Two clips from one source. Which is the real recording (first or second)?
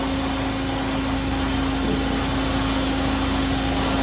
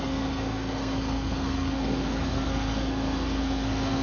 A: first